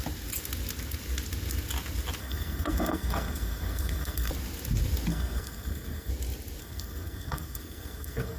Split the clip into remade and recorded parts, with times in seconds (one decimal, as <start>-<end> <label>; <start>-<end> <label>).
0.0-2.2 recorded; 2.2-4.3 remade; 4.3-5.1 recorded; 5.1-6.1 remade; 6.1-6.6 recorded; 6.6-8.4 remade